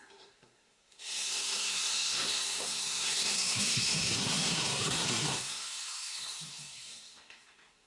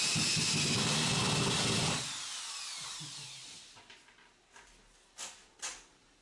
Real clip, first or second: second